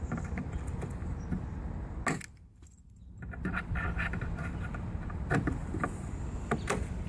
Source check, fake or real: real